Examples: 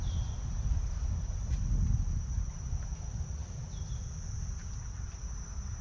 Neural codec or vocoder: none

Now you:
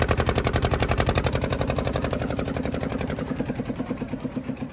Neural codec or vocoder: vocoder, BigVGAN v2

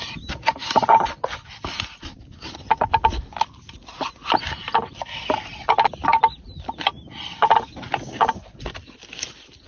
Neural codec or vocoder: none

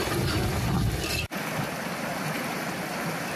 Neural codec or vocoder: vocoder, BigVGAN v2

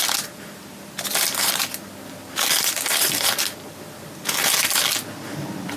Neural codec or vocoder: none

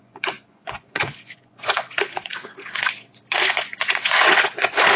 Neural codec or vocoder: vocoder, Vocos